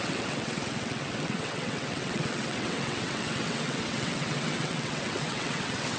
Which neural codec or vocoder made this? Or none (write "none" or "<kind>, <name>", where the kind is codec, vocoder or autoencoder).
vocoder, WaveNeXt